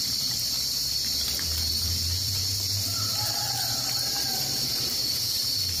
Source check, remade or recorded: remade